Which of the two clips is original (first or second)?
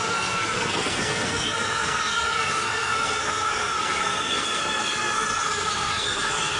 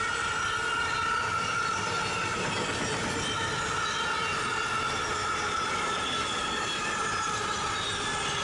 second